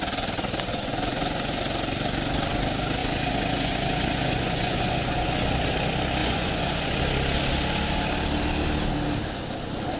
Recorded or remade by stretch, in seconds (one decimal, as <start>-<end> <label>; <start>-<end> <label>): 0.0-0.7 recorded; 0.7-1.6 remade; 1.6-3.0 recorded; 3.0-5.3 remade; 5.3-6.2 recorded; 6.2-7.0 remade; 7.0-10.0 recorded